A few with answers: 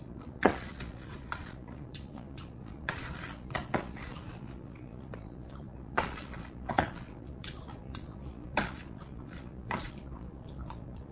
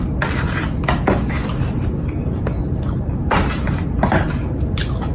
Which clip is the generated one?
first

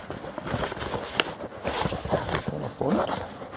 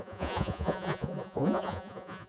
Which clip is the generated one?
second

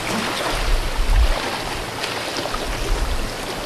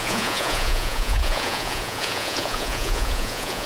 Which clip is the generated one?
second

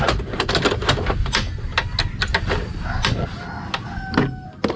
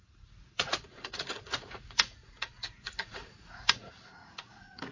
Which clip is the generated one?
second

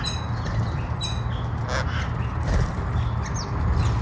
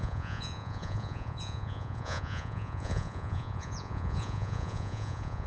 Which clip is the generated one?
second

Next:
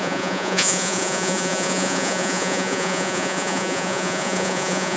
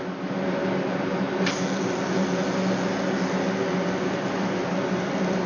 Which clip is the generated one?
first